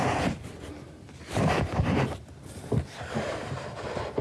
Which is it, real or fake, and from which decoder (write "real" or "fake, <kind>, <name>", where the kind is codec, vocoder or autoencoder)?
fake, vocoder, BigVGAN v2